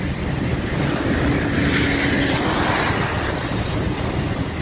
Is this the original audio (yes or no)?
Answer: yes